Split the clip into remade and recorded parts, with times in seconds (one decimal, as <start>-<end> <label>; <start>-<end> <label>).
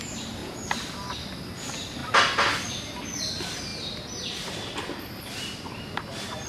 0.0-3.7 recorded; 3.7-5.7 remade; 5.7-6.5 recorded